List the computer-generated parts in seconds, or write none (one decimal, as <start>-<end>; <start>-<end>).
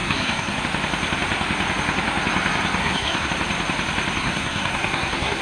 0.0-0.6; 2.8-3.3; 4.2-5.4